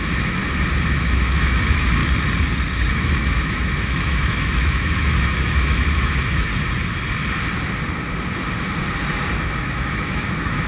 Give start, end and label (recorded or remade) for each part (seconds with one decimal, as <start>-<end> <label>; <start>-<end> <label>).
0.0-0.4 remade; 0.4-1.0 recorded; 1.0-2.0 remade; 2.0-2.9 recorded; 2.9-6.5 remade; 6.5-9.6 recorded; 9.6-10.7 remade